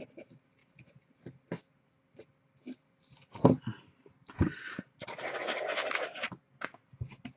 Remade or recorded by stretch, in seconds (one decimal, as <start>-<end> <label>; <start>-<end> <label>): 0.0-7.4 recorded